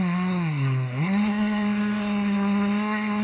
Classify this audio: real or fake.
fake